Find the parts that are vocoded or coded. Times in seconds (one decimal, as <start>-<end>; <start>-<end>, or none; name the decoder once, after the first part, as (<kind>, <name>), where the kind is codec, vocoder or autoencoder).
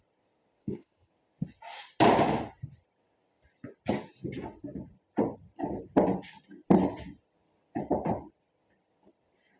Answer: 0.6-1.1 (codec, HILCodec)